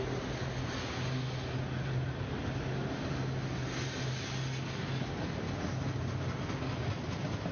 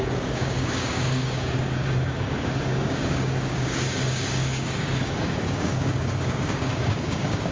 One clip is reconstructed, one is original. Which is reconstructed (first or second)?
second